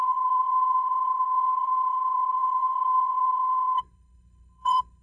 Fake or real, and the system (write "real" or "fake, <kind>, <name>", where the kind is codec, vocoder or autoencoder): fake, codec, HILCodec